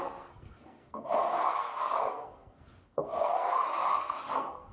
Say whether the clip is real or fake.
fake